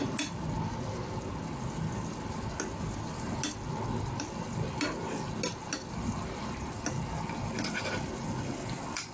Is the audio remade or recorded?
recorded